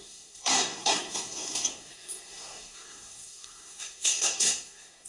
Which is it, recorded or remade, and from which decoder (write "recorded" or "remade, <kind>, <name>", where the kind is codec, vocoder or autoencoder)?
remade, codec, SNAC